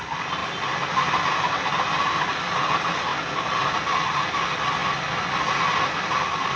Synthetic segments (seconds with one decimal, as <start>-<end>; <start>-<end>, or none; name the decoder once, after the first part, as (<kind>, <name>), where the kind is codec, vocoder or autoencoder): none